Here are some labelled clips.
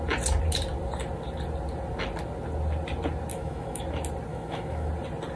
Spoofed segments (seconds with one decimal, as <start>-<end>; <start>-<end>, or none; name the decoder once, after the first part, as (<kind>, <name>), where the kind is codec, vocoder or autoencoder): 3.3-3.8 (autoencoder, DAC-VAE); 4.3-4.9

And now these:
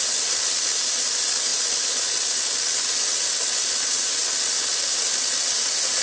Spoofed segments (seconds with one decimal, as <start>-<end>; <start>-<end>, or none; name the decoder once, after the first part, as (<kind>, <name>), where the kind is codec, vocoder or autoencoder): none

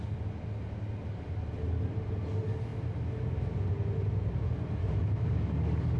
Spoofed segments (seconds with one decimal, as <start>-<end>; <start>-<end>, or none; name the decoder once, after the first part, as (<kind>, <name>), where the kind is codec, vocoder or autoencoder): 4.8-6.0 (codec, DAC)

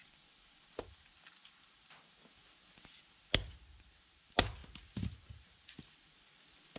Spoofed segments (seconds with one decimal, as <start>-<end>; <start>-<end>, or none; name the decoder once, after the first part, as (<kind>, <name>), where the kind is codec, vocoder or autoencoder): none

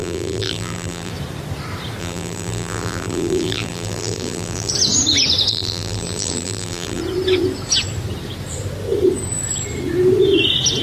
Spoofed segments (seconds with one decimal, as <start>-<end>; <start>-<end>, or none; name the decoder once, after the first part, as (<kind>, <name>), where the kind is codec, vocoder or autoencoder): 0.0-1.1 (vocoder, BigVGAN v2); 2.0-4.7; 5.5-7.0